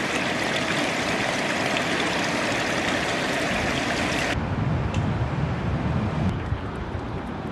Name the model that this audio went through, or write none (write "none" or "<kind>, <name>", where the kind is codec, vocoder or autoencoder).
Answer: none